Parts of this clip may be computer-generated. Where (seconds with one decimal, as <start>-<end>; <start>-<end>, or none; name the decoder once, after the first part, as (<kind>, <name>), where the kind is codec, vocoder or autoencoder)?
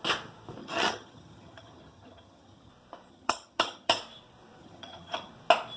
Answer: 0.6-2.7 (vocoder, HiFi-GAN); 3.1-4.0; 4.6-5.3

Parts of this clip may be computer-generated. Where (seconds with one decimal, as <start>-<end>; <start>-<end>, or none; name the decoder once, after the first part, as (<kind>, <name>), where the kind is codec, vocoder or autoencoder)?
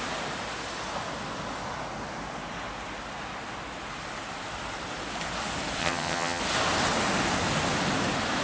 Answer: 5.8-6.4 (vocoder, HiFi-GAN)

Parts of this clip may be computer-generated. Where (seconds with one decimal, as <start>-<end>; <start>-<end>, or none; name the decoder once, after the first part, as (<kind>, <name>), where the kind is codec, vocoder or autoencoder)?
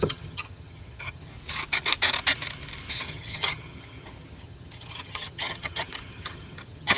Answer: 0.0-1.3 (vocoder, HiFi-GAN); 2.9-7.0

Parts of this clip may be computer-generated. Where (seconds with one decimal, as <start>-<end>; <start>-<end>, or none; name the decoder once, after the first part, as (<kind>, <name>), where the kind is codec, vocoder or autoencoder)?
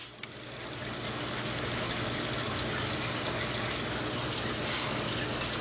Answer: none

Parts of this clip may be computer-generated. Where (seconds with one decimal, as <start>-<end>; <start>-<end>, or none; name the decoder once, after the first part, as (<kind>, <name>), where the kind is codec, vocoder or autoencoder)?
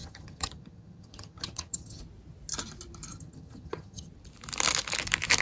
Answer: 0.0-2.0 (vocoder, HiFi-GAN); 3.1-4.1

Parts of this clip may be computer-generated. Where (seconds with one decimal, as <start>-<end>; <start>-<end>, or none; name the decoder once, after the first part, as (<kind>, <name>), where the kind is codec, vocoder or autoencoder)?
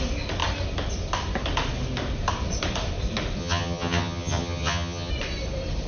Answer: 3.4-5.1 (vocoder, HiFi-GAN)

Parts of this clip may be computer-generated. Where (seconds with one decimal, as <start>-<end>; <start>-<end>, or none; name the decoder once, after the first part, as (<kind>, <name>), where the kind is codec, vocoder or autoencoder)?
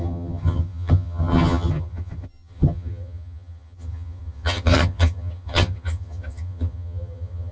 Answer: 0.0-7.5 (vocoder, HiFi-GAN)